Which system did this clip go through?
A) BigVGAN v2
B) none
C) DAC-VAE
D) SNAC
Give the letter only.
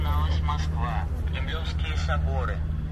B